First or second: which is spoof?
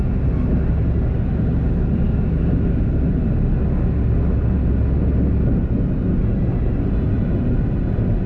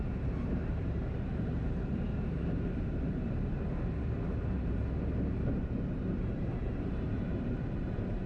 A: second